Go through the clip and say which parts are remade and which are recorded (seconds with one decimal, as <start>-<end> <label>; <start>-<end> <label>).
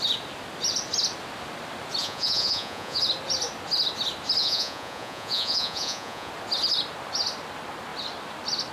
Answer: 0.0-2.0 recorded; 2.0-3.0 remade; 3.0-4.4 recorded; 4.4-6.3 remade; 6.3-8.7 recorded